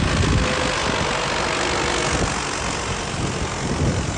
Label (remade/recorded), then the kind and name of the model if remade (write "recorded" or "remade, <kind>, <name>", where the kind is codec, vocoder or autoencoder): recorded